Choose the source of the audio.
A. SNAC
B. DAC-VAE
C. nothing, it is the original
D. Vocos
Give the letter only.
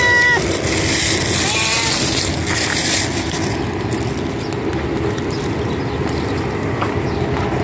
C